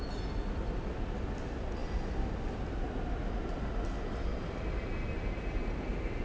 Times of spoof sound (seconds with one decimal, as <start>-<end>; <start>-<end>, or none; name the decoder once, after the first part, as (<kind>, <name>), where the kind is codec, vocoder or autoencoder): none